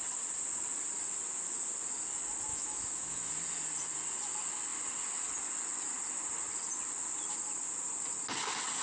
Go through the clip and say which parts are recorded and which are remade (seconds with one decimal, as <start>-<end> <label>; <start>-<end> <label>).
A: 0.0-2.5 recorded; 2.5-3.3 remade; 3.3-8.8 recorded